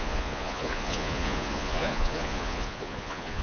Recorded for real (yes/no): no